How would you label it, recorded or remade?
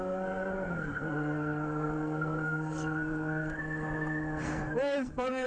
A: remade